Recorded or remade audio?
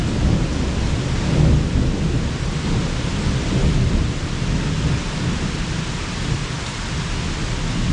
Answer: recorded